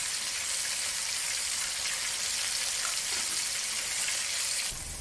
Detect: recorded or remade recorded